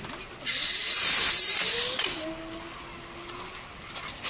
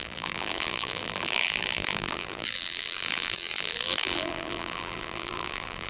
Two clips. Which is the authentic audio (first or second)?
first